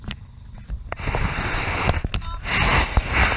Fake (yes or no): no